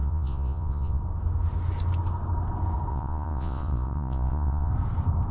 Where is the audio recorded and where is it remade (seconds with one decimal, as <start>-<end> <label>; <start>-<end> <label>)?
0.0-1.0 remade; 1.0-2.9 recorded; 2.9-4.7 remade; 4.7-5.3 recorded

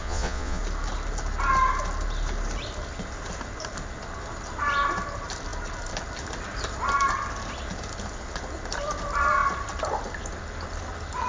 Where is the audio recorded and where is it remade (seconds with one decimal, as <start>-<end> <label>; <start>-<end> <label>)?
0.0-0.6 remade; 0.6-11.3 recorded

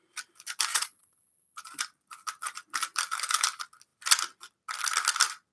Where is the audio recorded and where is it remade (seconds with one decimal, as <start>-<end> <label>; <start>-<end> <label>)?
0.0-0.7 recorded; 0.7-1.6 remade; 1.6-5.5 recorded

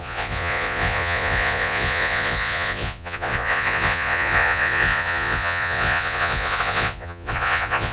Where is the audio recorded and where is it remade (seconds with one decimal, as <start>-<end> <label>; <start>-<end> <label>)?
0.0-7.9 remade

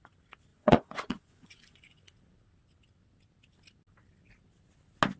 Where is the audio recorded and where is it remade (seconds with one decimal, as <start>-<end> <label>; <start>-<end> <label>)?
0.0-0.5 recorded; 0.5-2.0 remade; 2.0-5.2 recorded

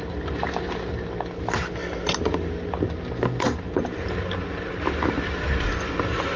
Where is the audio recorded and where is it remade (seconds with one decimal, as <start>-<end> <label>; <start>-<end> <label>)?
0.0-6.4 recorded

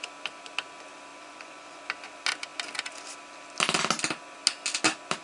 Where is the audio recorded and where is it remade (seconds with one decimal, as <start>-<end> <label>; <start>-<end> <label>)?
0.0-1.1 recorded; 1.1-1.8 remade; 1.8-5.2 recorded

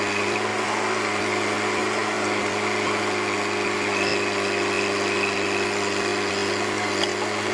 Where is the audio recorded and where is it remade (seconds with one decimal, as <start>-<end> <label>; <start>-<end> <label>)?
0.0-7.5 recorded